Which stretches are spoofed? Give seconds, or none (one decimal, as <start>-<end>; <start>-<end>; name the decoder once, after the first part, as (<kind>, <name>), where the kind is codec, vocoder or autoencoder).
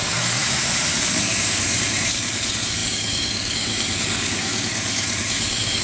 0.0-0.4 (codec, DAC); 1.0-5.8